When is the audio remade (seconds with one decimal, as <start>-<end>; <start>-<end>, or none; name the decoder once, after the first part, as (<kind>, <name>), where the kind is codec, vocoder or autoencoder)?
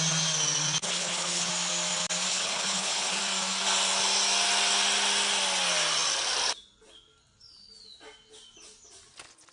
0.8-1.5 (codec, HILCodec); 2.3-3.2